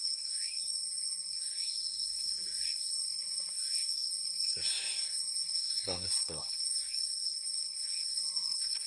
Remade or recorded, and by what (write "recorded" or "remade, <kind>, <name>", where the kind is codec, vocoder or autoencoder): remade, codec, SNAC